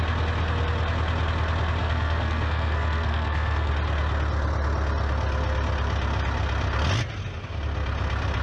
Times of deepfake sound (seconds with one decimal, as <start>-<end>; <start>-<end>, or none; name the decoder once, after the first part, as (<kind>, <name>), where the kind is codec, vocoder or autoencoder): 1.8-3.7 (codec, SNAC)